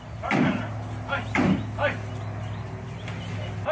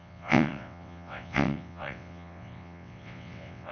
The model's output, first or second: second